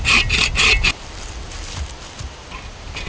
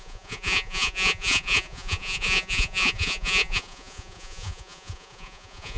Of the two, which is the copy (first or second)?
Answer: second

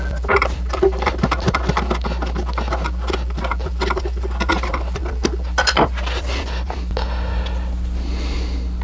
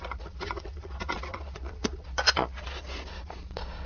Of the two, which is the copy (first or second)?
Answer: second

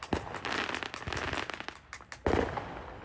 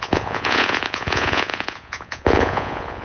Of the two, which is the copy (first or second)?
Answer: second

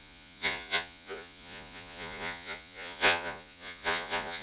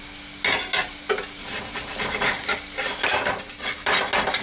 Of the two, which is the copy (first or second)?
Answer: first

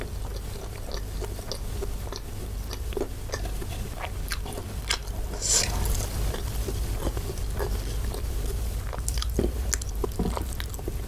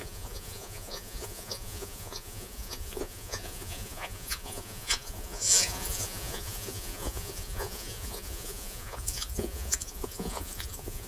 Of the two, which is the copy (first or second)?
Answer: second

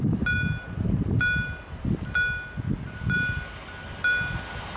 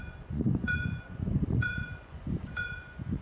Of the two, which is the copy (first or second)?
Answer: second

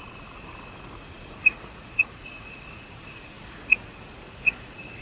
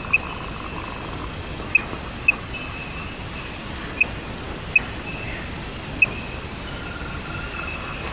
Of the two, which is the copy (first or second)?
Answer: first